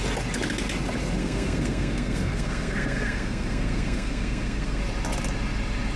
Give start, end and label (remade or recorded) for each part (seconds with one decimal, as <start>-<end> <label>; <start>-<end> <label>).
0.0-1.2 recorded; 1.2-4.8 remade; 4.8-6.0 recorded